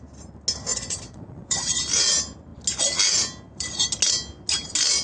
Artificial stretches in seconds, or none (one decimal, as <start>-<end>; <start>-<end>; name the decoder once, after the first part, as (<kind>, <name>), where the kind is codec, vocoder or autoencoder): 0.7-1.8 (vocoder, Vocos)